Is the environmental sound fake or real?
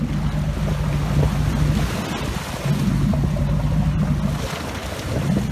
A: real